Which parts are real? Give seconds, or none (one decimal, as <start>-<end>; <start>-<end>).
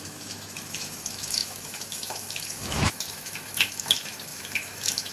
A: none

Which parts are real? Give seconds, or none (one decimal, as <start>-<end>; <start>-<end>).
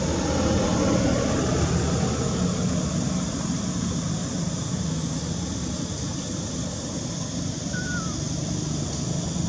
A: 0.0-9.5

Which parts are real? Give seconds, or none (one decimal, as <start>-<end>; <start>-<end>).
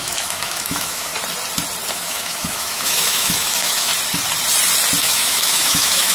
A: 1.1-1.9; 3.9-5.0